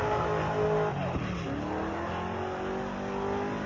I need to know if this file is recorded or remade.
recorded